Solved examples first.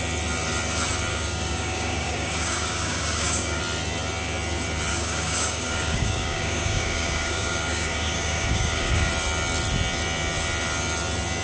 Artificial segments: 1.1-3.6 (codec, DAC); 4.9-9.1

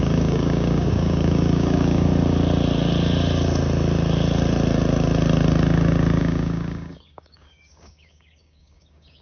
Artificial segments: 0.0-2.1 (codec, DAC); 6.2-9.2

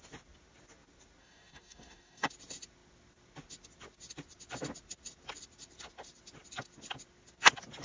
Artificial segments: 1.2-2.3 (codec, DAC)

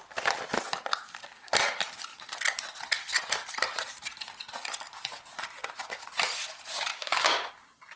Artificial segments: 6.9-7.5 (codec, DAC)

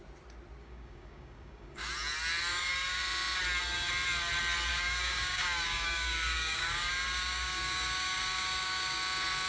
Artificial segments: 0.6-1.8 (codec, DAC); 2.5-3.0; 4.7-9.0

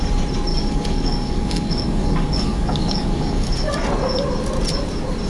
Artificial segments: 0.5-3.7 (codec, DAC)

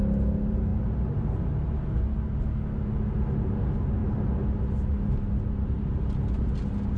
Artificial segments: none

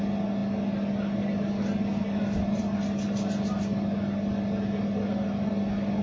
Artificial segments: none